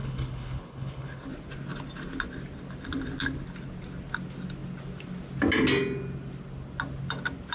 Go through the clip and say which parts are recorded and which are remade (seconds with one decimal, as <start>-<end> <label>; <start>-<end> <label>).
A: 0.0-1.3 remade; 1.3-7.5 recorded